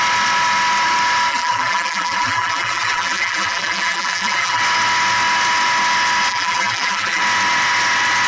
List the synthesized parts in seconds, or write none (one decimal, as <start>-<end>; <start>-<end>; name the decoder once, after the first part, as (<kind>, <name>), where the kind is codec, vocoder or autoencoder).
1.3-4.6 (vocoder, BigVGAN v2); 6.3-7.2